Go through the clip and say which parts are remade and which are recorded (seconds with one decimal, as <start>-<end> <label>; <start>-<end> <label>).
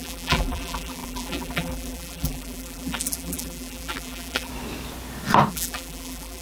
0.0-4.5 remade; 4.5-5.5 recorded; 5.5-6.4 remade